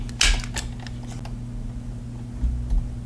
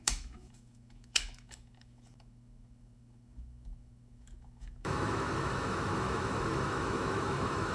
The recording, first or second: first